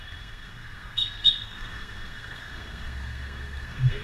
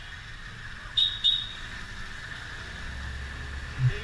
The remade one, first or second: first